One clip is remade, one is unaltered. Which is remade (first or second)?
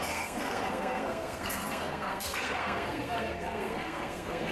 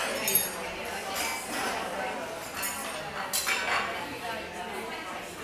first